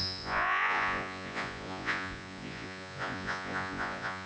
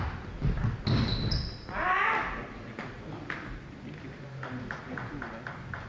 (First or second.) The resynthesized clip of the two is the first